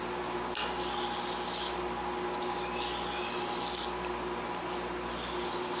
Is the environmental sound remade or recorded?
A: recorded